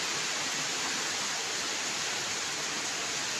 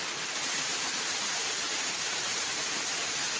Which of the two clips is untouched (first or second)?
first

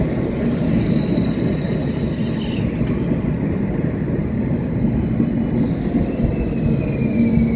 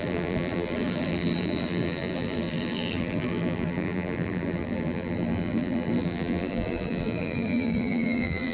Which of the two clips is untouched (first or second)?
first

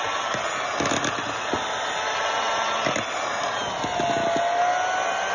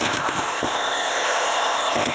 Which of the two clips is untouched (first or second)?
first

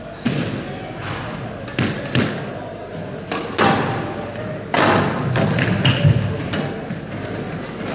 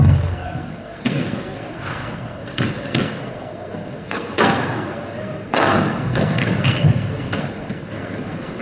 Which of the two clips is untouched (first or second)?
first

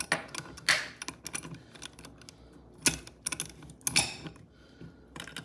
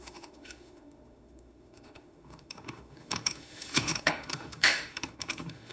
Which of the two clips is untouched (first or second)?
first